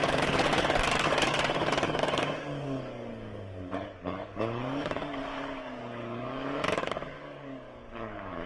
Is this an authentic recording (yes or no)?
no